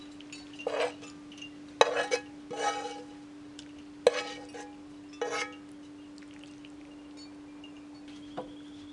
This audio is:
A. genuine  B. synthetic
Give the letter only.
A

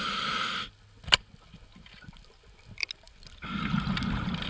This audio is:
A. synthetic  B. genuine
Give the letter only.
B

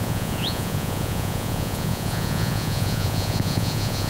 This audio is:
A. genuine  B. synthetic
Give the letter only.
B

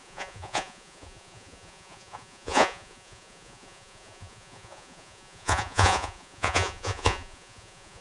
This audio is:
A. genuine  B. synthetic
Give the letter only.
B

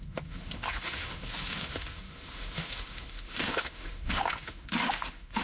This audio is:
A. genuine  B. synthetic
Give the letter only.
B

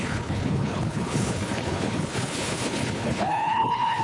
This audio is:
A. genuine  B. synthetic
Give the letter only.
B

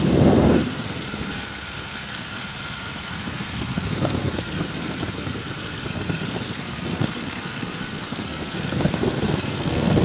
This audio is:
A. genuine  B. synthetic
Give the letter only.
B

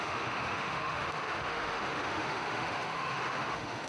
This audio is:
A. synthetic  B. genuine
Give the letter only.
A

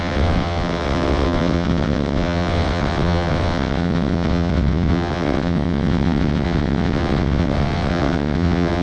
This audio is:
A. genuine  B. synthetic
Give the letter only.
B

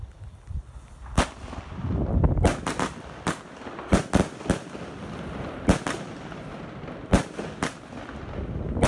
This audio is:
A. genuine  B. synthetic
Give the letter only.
A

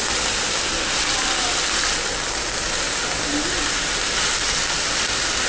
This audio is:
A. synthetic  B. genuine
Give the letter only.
B